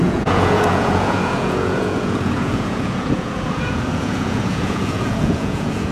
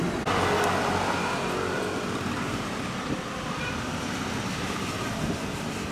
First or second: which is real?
second